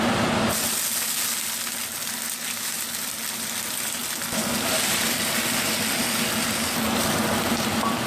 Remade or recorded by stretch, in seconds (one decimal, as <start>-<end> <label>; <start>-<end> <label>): 0.0-8.1 recorded

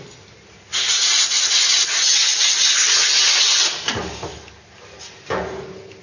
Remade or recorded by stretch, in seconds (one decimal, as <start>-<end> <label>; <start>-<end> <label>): 0.0-6.0 recorded

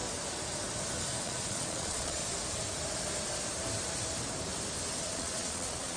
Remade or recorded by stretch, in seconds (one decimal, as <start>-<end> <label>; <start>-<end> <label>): 0.0-1.2 recorded; 1.2-2.2 remade; 2.2-5.0 recorded; 5.0-6.0 remade

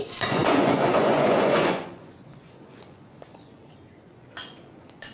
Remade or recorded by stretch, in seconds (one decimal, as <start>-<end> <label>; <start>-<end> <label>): 0.0-5.1 remade

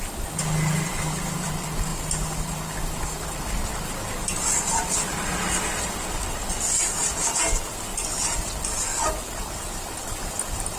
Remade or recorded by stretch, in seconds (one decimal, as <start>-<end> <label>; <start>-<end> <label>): 0.0-7.9 recorded; 7.9-9.8 remade; 9.8-10.8 recorded

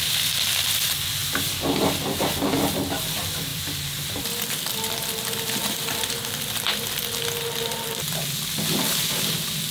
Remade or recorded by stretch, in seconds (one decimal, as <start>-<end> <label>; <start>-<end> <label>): 0.0-3.5 recorded; 3.5-6.6 remade; 6.6-9.7 recorded

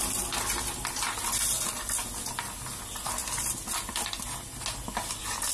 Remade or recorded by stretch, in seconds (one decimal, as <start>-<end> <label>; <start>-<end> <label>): 0.0-5.5 recorded

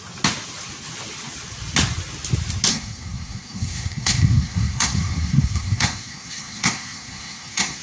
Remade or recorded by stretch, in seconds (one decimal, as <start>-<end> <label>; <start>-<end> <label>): 0.0-2.7 recorded; 2.7-7.8 remade